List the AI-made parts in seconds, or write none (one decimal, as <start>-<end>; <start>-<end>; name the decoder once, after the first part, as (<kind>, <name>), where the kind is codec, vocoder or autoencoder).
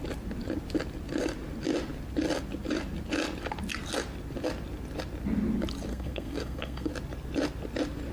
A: 5.9-6.9 (codec, SNAC)